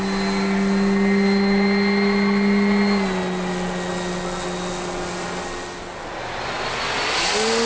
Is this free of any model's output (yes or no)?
yes